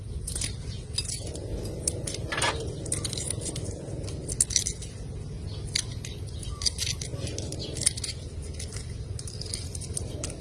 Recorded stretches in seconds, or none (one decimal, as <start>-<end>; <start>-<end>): 0.0-10.4